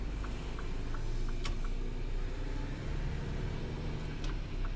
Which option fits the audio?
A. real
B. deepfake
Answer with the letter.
A